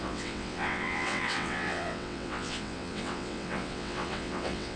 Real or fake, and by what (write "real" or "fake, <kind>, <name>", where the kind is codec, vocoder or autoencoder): fake, vocoder, WaveNeXt